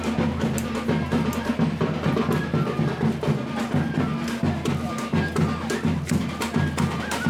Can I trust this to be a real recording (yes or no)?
yes